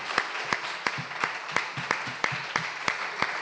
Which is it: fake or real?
real